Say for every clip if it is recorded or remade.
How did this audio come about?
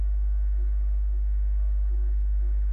remade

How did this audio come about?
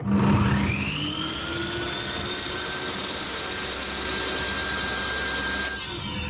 recorded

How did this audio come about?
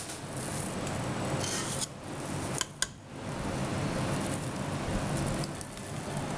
recorded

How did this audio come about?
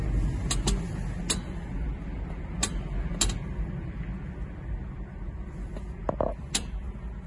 recorded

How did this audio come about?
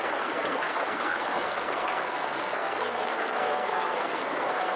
remade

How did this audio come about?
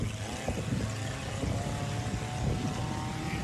recorded